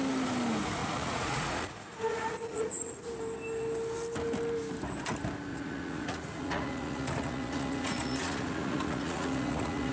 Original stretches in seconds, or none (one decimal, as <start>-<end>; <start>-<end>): 0.0-0.8; 3.1-5.5